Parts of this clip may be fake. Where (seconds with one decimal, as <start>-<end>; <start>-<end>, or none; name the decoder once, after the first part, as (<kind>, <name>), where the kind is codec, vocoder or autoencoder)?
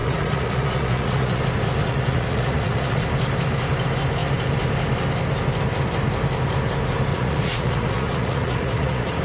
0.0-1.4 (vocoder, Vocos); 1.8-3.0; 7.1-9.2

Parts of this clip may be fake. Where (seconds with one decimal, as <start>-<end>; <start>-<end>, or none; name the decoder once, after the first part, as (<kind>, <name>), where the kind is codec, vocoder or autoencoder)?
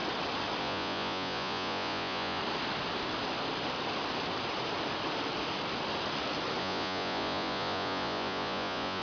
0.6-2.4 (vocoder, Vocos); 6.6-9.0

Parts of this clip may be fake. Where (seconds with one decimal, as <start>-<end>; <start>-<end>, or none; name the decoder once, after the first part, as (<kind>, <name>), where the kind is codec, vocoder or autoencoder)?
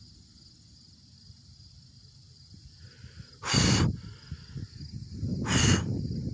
none